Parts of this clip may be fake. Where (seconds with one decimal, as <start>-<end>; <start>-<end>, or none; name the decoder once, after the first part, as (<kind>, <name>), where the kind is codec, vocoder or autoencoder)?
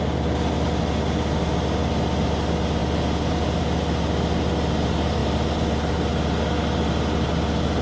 none